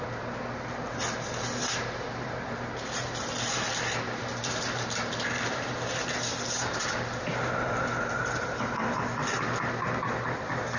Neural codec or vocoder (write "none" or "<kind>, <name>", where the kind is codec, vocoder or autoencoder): vocoder, BigVGAN v2